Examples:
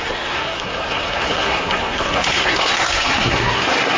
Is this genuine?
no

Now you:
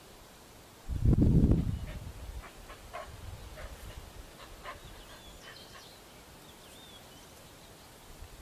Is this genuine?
yes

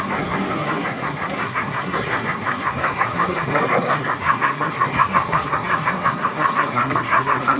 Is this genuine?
no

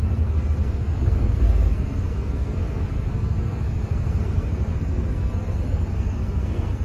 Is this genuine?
no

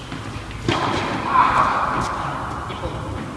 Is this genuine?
yes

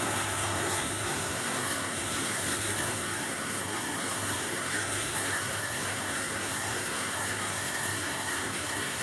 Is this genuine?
no